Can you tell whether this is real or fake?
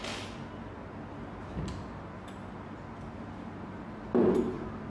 real